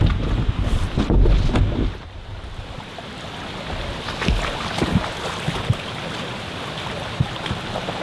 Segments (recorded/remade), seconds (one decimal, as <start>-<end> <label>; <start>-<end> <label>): 0.0-8.0 recorded